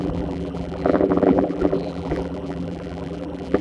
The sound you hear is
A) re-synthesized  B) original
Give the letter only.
A